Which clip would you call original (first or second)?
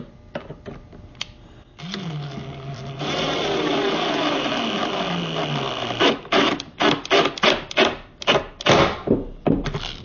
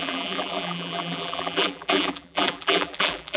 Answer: first